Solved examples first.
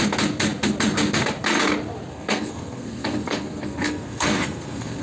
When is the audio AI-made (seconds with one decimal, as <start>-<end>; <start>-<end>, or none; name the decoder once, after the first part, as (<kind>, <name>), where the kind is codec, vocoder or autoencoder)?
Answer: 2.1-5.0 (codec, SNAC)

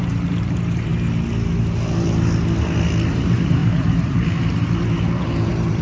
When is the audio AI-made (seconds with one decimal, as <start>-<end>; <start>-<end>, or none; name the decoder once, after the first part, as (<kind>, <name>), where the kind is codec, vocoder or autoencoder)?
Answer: 0.0-0.9 (vocoder, BigVGAN v2); 3.1-5.8

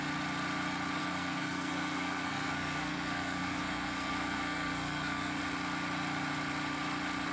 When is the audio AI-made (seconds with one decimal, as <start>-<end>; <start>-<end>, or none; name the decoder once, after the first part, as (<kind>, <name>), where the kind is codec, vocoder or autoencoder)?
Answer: 1.0-5.4 (codec, SNAC)

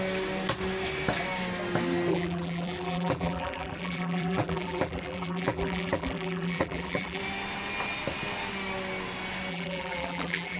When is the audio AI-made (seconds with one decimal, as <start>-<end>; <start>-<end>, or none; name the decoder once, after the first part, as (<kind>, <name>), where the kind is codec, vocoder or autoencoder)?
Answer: 2.1-7.2 (vocoder, BigVGAN v2); 9.5-10.6

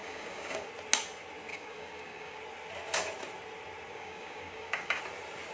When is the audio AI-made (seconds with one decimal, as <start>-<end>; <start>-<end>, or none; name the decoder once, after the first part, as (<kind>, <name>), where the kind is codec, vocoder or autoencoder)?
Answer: 0.0-0.7 (codec, DAC); 1.5-2.4; 3.9-5.0

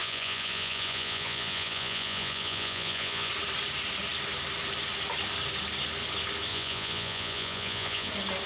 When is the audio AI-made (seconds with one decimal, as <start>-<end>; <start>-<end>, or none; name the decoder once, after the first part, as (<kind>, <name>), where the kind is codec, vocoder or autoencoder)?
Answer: 0.0-3.3 (vocoder, Vocos); 6.5-8.1